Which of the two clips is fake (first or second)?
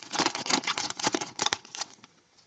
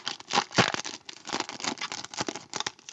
first